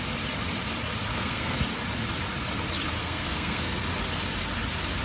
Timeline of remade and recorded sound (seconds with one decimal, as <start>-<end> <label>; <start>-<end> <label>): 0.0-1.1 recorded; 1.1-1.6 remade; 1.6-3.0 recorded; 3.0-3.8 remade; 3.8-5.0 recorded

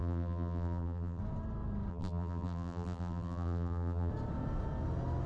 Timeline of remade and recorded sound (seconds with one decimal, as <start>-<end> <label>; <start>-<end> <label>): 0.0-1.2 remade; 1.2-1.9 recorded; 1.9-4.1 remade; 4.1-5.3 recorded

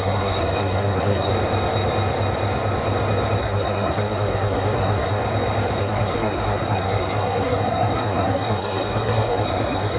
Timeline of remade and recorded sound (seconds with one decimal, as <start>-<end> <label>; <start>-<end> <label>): 0.0-1.3 remade; 1.3-3.4 recorded; 3.4-5.2 remade; 5.2-5.8 recorded; 5.8-10.0 remade